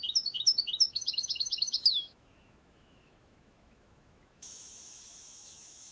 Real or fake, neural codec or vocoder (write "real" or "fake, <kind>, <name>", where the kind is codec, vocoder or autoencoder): fake, autoencoder, DAC-VAE